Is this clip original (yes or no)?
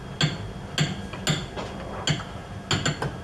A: yes